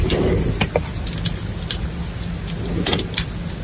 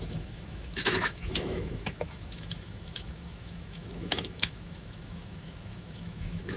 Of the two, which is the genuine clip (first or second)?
first